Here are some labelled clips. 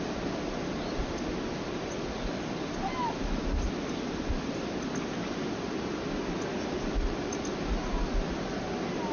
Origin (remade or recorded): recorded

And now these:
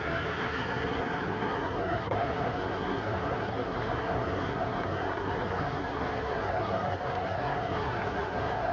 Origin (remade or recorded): remade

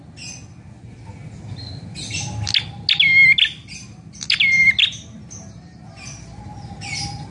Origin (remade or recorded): recorded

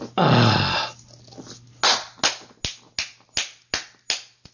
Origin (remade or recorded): recorded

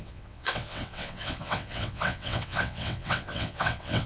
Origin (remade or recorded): remade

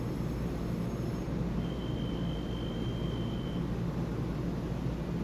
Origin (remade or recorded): recorded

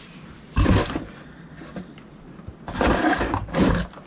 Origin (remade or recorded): recorded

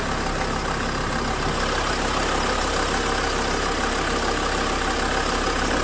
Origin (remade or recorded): recorded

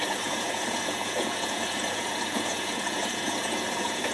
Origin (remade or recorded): remade